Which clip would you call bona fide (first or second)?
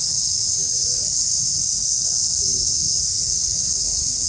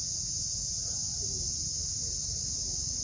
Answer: second